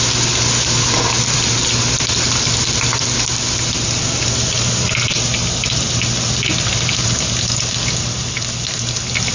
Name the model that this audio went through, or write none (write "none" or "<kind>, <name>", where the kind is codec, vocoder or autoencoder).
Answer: none